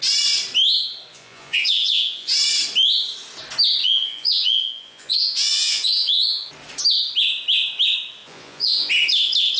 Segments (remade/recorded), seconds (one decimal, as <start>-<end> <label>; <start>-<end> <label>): 0.0-1.1 recorded; 1.1-2.3 remade; 2.3-3.8 recorded; 3.8-6.5 remade; 6.5-8.2 recorded; 8.2-8.9 remade; 8.9-9.6 recorded